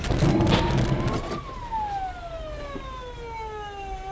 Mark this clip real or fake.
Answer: real